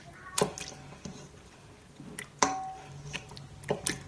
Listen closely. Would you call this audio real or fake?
real